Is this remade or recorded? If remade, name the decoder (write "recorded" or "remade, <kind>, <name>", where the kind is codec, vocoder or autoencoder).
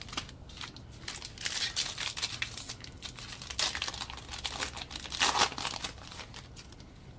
recorded